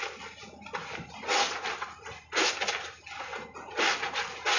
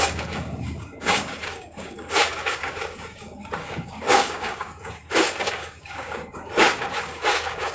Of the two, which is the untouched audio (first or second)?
first